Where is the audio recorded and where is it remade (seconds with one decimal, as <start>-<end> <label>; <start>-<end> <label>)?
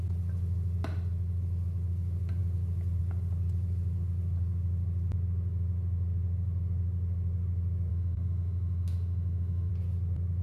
0.0-7.9 recorded; 7.9-9.7 remade; 9.7-10.4 recorded